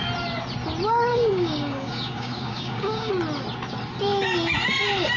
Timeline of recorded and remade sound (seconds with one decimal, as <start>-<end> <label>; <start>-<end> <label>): 0.0-1.1 recorded; 1.1-3.1 remade; 3.1-5.2 recorded